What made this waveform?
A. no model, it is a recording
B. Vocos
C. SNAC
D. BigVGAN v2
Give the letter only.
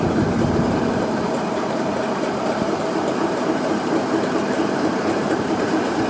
D